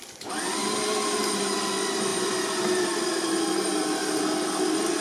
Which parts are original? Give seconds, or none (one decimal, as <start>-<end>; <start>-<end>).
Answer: 0.0-0.6; 1.7-2.1; 4.2-5.0